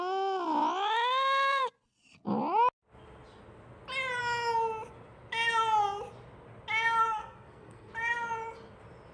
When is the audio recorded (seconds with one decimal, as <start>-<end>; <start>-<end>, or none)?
0.0-7.0; 7.9-9.1